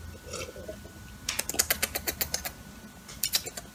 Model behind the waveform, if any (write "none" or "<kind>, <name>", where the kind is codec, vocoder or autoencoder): none